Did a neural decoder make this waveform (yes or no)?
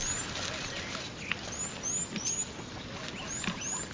no